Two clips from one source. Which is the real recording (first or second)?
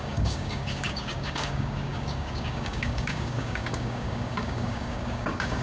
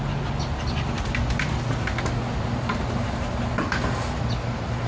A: second